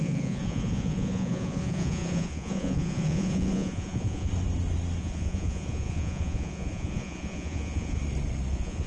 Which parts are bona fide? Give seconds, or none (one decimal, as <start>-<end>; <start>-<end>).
4.3-5.0; 8.0-8.5

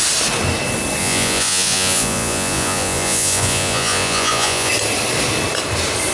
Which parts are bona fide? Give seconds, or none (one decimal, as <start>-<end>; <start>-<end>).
0.0-1.0; 4.7-6.1

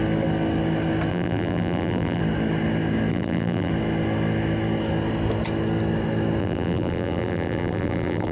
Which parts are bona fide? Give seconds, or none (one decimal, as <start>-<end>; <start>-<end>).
0.0-1.1; 2.2-3.1; 3.7-6.4

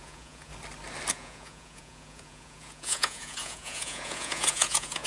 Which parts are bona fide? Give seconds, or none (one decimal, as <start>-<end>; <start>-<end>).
0.5-1.1

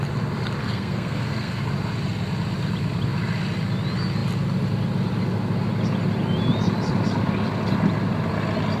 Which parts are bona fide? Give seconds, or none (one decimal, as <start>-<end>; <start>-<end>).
0.0-0.6; 1.6-8.8

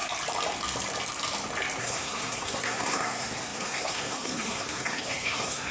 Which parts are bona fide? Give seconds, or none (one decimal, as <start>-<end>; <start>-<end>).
0.0-1.8